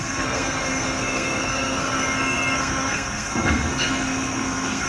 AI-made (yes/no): yes